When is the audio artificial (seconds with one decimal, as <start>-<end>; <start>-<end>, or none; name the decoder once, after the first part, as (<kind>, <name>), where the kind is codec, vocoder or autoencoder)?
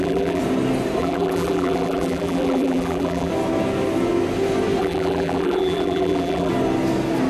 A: 0.0-0.4 (vocoder, BigVGAN v2); 1.0-3.3; 4.8-6.5